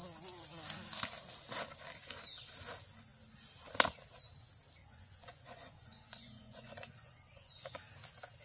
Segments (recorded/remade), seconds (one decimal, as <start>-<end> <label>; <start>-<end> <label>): 0.0-4.8 recorded; 4.8-7.8 remade; 7.8-8.4 recorded